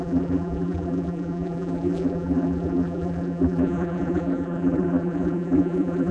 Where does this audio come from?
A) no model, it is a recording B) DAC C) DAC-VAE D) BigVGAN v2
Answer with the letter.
D